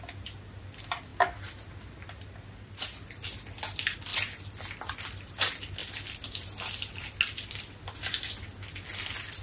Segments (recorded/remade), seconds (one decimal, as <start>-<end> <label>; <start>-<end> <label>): 0.0-9.4 recorded